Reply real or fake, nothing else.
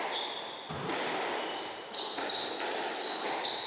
real